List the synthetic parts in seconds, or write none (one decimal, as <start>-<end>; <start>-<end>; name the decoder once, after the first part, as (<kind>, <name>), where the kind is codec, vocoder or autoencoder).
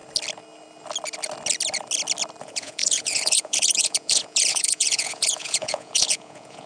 2.4-6.7 (vocoder, Vocos)